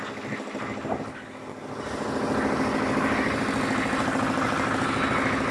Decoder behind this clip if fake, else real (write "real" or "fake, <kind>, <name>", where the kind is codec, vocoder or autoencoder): real